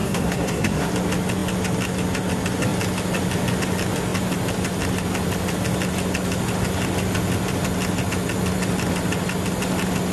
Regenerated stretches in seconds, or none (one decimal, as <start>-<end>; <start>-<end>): 0.0-0.9